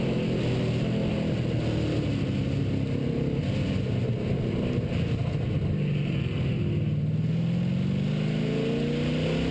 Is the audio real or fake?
real